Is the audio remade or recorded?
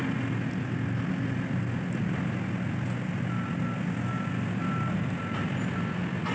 recorded